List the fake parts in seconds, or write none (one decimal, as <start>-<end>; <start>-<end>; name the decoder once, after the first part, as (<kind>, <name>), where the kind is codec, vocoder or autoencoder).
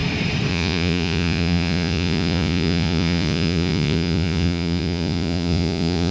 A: 0.5-6.1 (vocoder, Vocos)